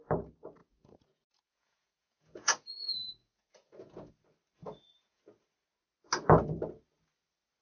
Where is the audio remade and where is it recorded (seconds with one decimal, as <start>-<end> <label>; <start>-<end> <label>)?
0.0-0.6 recorded; 0.6-4.1 remade; 4.1-4.6 recorded; 4.6-5.2 remade; 5.2-7.6 recorded